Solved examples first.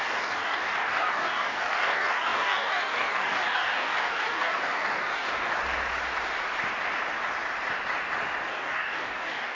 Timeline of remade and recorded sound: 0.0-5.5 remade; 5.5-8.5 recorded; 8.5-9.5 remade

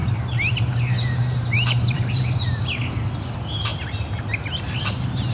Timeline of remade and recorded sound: 0.0-3.2 remade; 3.2-5.3 recorded

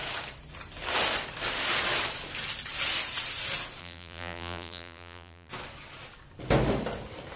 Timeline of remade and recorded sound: 0.0-3.8 recorded; 3.8-5.5 remade; 5.5-7.4 recorded

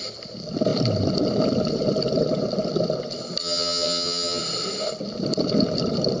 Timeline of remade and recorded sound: 0.0-3.4 recorded; 3.4-4.4 remade; 4.4-6.2 recorded

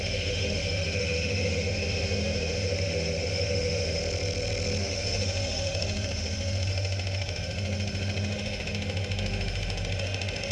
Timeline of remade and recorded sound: 0.0-4.0 remade; 4.0-4.8 recorded; 4.8-10.5 remade

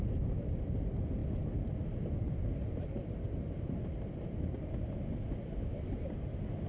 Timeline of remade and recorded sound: 0.0-6.7 recorded

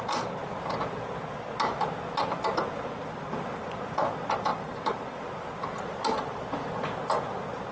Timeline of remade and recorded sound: 0.0-4.5 recorded; 4.5-5.2 remade; 5.2-7.7 recorded